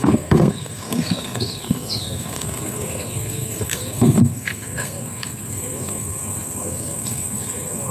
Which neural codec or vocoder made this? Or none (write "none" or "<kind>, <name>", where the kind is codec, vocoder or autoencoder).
codec, SNAC